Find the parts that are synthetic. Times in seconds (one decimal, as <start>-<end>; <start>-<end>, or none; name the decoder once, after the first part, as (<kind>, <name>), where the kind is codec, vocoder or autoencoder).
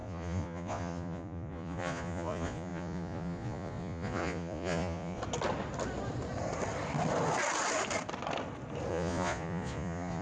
0.0-5.2 (vocoder, Vocos); 8.9-10.2